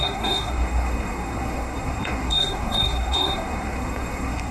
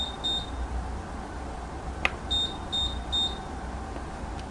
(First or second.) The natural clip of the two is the second